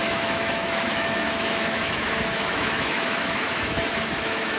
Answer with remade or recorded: remade